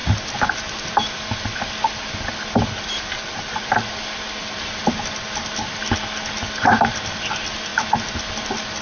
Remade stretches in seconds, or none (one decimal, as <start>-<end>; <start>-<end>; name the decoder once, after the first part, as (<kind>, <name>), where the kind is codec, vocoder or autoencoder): none